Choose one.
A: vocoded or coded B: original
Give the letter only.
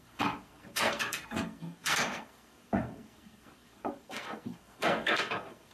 A